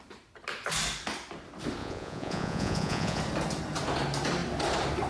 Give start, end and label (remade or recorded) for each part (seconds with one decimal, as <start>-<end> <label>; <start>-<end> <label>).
0.0-1.8 recorded; 1.8-3.2 remade; 3.2-5.1 recorded